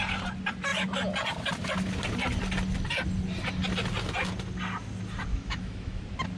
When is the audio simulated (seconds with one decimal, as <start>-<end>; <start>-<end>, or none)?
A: 5.3-6.0